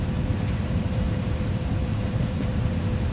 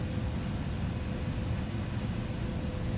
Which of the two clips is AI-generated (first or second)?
first